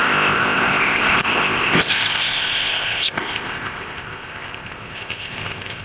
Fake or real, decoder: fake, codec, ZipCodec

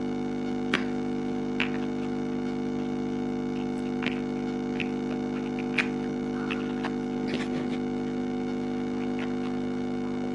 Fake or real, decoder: real